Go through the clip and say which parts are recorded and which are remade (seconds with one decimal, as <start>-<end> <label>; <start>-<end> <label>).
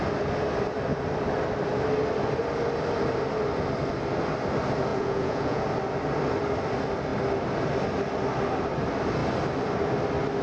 0.0-4.9 recorded; 4.9-5.6 remade; 5.6-10.4 recorded